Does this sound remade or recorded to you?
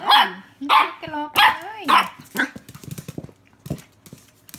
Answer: recorded